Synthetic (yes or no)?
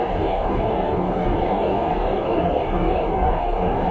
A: yes